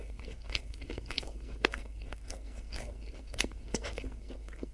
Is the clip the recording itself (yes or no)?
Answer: no